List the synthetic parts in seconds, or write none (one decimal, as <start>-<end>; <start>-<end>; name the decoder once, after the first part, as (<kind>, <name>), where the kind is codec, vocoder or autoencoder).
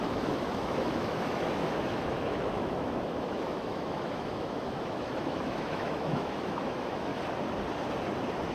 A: 0.0-7.1 (autoencoder, DAC-VAE)